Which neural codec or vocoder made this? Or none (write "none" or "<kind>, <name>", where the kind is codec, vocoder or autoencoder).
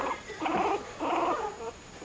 vocoder, BigVGAN v2